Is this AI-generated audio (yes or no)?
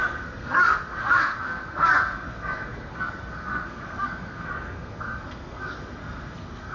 yes